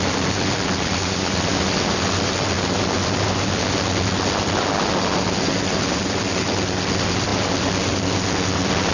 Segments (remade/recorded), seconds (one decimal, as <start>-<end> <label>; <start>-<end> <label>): 0.0-8.9 recorded